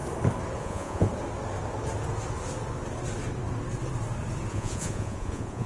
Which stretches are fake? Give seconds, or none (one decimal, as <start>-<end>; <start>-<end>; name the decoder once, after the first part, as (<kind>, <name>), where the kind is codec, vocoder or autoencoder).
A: 0.6-1.1 (vocoder, Vocos); 4.5-5.7